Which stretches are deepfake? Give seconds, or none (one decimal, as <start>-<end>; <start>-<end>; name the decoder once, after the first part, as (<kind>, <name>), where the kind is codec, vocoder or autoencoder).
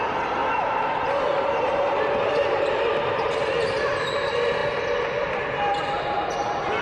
0.0-0.4 (vocoder, BigVGAN v2); 2.2-4.6; 5.9-6.8